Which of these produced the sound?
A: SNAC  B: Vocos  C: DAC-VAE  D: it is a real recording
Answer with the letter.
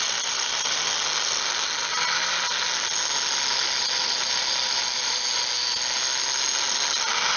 D